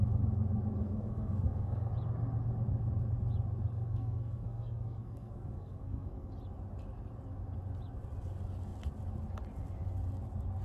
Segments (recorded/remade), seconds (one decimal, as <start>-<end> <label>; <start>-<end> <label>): 0.0-0.8 recorded; 0.8-1.9 remade; 1.9-3.7 recorded; 3.7-6.3 remade; 6.3-10.6 recorded

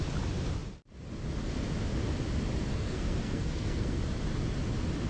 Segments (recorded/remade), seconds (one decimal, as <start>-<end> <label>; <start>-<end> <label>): 0.0-2.7 recorded; 2.7-4.0 remade; 4.0-5.1 recorded

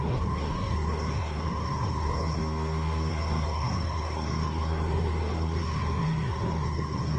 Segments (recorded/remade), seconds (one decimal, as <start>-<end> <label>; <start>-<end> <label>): 0.0-2.4 remade; 2.4-3.1 recorded; 3.1-7.2 remade

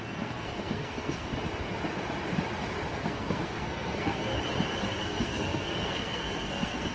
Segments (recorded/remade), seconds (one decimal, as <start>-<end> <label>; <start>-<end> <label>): 0.0-1.3 remade; 1.3-2.9 recorded; 2.9-4.3 remade; 4.3-5.0 recorded; 5.0-6.9 remade

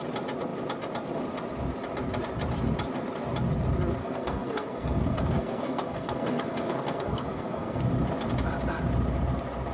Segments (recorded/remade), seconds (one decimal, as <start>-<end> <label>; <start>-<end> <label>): 0.0-4.0 recorded; 4.0-7.8 remade; 7.8-9.7 recorded